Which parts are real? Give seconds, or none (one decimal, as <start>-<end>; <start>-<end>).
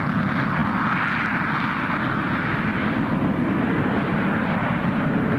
0.0-5.4